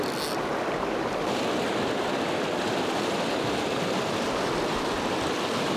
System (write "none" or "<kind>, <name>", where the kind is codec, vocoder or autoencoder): none